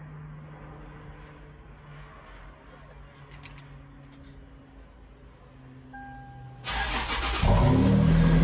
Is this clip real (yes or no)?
yes